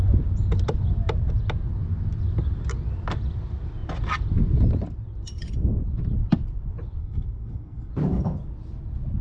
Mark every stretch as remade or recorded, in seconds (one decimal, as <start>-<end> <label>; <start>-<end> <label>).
0.0-7.0 recorded; 7.0-7.9 remade; 7.9-9.2 recorded